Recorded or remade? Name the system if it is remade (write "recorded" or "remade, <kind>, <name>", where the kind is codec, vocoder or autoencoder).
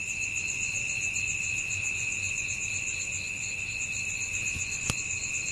remade, vocoder, Vocos